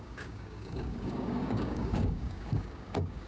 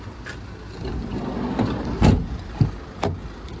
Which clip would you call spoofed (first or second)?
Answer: first